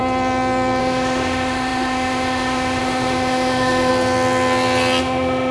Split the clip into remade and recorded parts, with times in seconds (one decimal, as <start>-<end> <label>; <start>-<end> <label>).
0.0-0.8 recorded; 0.8-3.9 remade; 3.9-5.0 recorded; 5.0-5.5 remade